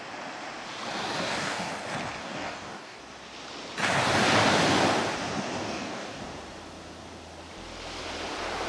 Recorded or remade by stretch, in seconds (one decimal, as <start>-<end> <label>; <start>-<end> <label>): 0.0-1.2 recorded; 1.2-1.7 remade; 1.7-2.2 recorded; 2.2-3.0 remade; 3.0-5.6 recorded; 5.6-6.2 remade; 6.2-8.7 recorded